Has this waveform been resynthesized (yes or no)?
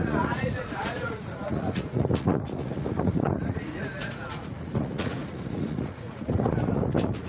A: yes